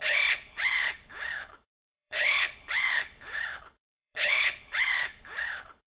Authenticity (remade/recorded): remade